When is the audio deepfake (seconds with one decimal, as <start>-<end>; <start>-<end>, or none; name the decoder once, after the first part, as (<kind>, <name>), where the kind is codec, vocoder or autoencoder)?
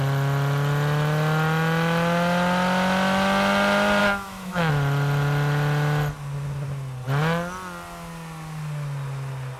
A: 4.0-4.7 (autoencoder, DAC-VAE)